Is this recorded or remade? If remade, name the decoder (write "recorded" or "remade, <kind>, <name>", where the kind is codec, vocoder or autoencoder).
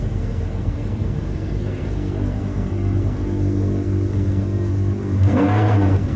remade, codec, SNAC